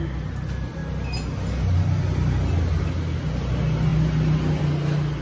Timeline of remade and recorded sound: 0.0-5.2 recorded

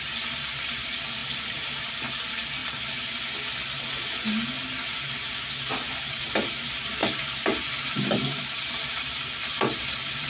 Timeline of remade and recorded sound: 0.0-2.6 remade; 2.6-5.4 recorded; 5.4-10.3 remade

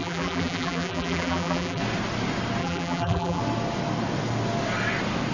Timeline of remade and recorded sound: 0.0-1.8 remade; 1.8-2.6 recorded; 2.6-3.4 remade; 3.4-5.3 recorded

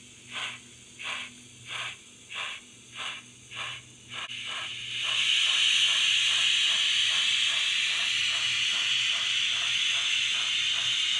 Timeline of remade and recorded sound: 0.0-4.7 recorded; 4.7-5.3 remade; 5.3-5.9 recorded; 5.9-6.4 remade; 6.4-11.2 recorded

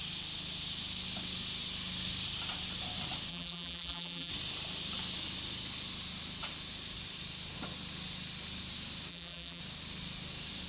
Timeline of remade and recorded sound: 0.0-3.3 recorded; 3.3-4.3 remade; 4.3-9.1 recorded; 9.1-9.6 remade; 9.6-10.7 recorded

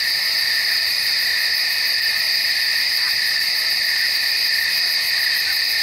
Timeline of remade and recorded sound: 0.0-1.3 recorded; 1.3-3.7 remade; 3.7-5.8 recorded

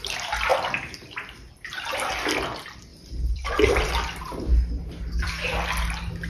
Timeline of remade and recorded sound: 0.0-2.9 recorded; 2.9-4.9 remade; 4.9-6.3 recorded